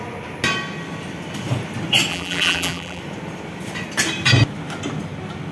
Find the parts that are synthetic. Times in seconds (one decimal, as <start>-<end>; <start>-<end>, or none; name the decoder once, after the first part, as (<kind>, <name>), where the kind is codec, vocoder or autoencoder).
2.1-3.0 (vocoder, BigVGAN v2)